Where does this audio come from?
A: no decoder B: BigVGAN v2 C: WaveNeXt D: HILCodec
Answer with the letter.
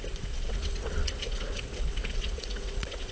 C